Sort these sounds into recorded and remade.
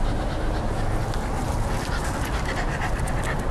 recorded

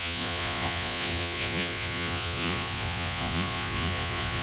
remade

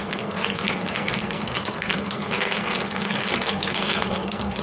remade